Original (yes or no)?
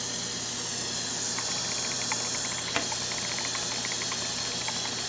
yes